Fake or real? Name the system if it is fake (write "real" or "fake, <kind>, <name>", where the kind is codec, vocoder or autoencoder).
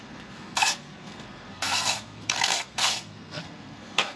fake, codec, SNAC